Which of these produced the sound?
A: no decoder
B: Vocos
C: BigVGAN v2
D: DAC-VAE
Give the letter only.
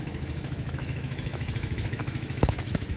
D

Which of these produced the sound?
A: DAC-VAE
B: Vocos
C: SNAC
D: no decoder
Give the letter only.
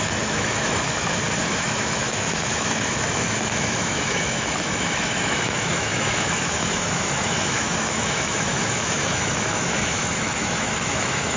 A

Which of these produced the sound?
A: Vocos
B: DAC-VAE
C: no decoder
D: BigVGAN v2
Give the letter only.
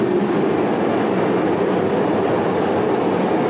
C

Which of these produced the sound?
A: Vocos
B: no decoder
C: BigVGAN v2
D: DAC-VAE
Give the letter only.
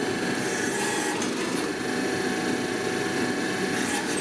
B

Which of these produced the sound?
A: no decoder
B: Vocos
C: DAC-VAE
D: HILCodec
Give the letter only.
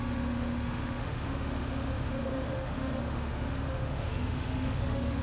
C